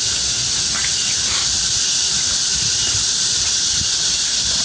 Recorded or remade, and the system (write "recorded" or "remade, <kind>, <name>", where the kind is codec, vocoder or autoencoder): recorded